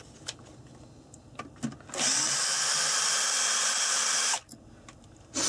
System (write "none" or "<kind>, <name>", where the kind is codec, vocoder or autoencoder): none